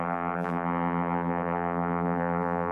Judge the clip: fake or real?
fake